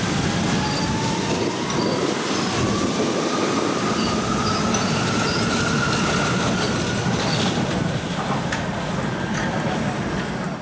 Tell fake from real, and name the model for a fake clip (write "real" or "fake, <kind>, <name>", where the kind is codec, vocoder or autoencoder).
real